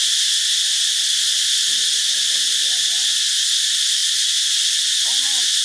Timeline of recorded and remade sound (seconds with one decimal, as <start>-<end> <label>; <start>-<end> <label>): 0.0-5.6 recorded